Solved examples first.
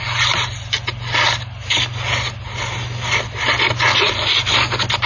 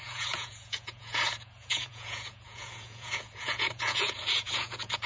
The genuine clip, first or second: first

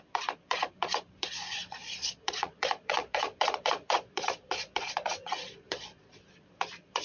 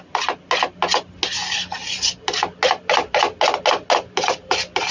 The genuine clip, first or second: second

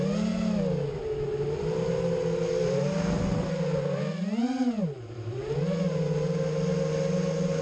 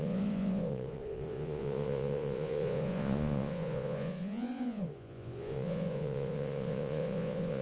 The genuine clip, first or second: first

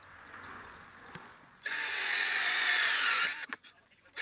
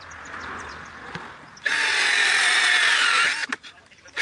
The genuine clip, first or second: second